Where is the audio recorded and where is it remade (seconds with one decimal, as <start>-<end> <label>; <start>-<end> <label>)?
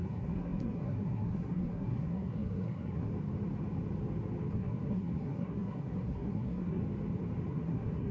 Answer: 0.0-3.1 remade; 3.1-4.5 recorded; 4.5-6.8 remade; 6.8-7.5 recorded; 7.5-8.1 remade